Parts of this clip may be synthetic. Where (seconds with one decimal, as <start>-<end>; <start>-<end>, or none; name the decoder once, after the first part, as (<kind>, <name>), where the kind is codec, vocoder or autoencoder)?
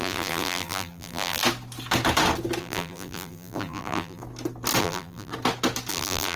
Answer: 0.0-1.4 (vocoder, BigVGAN v2); 2.6-4.2; 4.8-5.3; 5.9-6.4